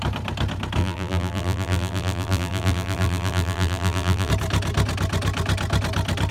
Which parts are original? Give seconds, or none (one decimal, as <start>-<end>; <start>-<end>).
0.0-0.8; 4.3-6.3